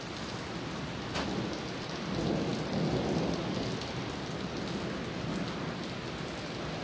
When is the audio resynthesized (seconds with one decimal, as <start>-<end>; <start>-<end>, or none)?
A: none